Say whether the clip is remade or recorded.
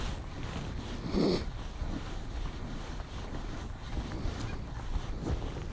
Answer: recorded